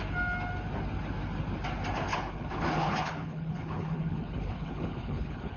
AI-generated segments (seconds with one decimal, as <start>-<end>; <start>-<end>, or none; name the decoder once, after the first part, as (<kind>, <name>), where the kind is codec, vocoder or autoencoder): 2.1-5.6 (codec, HILCodec)

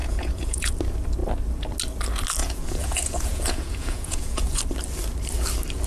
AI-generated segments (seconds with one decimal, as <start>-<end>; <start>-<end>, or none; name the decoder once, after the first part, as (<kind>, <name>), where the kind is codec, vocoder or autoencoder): 0.0-0.7 (vocoder, Vocos); 2.4-4.6

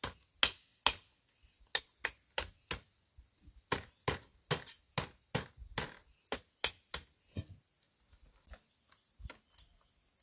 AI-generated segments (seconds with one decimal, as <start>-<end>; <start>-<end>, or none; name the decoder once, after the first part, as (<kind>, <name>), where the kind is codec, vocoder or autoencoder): none